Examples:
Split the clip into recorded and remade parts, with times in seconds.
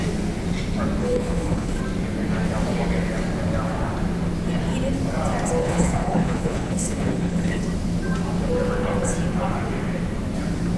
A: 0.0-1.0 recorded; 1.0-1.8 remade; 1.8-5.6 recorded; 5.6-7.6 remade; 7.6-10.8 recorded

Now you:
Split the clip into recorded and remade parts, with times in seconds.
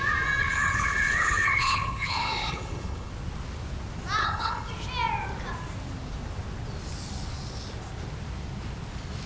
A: 0.0-0.4 recorded; 0.4-3.1 remade; 3.1-4.2 recorded; 4.2-4.7 remade; 4.7-9.3 recorded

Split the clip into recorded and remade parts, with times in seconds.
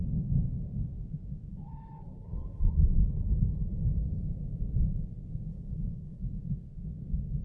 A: 0.0-1.5 recorded; 1.5-4.0 remade; 4.0-5.5 recorded; 5.5-6.2 remade; 6.2-7.4 recorded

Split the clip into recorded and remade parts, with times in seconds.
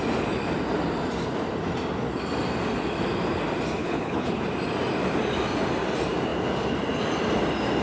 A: 0.0-3.8 recorded; 3.8-4.4 remade; 4.4-7.8 recorded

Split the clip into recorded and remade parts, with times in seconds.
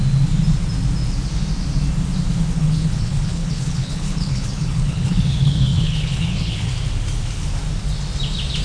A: 0.0-2.6 recorded; 2.6-6.7 remade; 6.7-8.6 recorded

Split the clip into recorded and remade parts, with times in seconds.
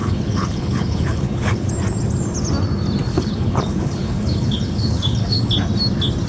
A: 0.0-1.7 remade; 1.7-3.1 recorded; 3.1-5.5 remade; 5.5-6.3 recorded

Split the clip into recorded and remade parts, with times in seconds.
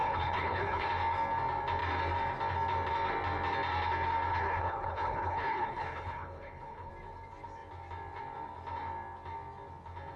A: 0.0-0.9 remade; 0.9-4.3 recorded; 4.3-6.9 remade; 6.9-10.2 recorded